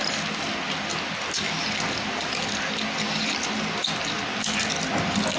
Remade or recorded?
recorded